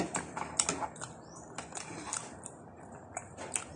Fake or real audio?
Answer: real